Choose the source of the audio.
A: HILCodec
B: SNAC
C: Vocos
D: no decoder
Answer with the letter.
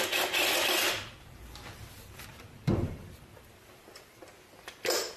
D